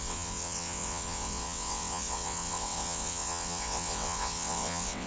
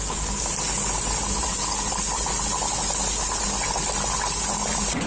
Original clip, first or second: second